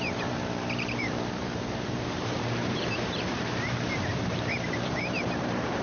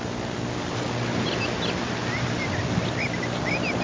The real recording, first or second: second